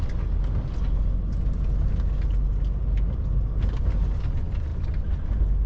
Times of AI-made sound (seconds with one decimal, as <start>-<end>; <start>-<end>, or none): none